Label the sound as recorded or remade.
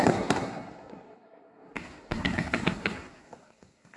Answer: remade